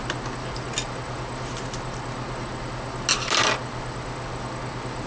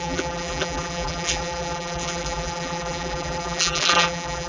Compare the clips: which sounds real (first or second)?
first